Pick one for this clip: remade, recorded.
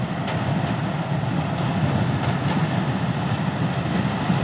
recorded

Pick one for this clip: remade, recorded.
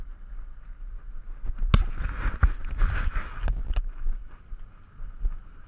recorded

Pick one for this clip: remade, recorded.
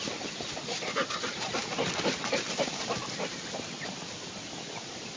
recorded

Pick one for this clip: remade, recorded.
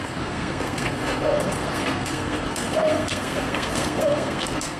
remade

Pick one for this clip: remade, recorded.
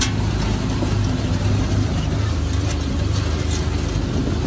recorded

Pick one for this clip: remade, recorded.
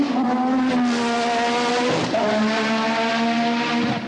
recorded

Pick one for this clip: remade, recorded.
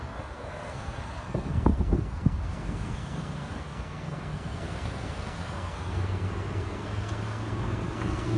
remade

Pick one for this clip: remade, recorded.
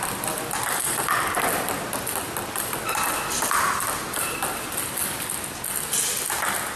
recorded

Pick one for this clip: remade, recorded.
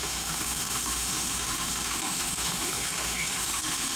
remade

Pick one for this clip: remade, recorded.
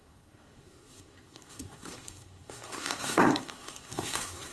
remade